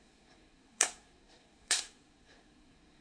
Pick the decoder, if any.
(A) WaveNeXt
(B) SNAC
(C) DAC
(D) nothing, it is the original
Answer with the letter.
B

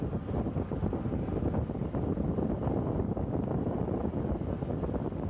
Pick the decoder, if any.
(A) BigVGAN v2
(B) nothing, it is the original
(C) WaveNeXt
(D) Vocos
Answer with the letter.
B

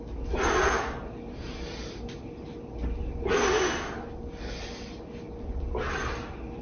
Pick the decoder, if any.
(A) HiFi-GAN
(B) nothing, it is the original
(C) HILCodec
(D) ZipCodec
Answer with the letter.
B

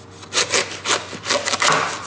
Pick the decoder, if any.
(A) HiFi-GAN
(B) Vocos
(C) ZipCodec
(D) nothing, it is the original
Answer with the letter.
D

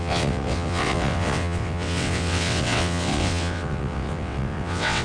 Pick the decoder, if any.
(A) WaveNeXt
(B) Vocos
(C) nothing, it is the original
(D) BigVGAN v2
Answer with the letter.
A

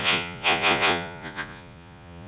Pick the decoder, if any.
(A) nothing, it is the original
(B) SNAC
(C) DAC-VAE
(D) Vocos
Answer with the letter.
D